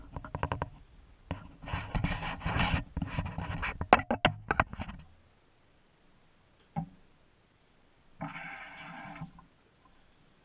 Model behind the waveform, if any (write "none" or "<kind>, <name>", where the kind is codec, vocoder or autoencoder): none